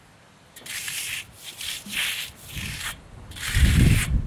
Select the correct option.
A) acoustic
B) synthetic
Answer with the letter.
B